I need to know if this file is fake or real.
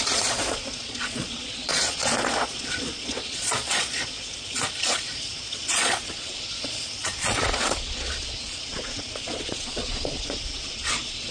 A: fake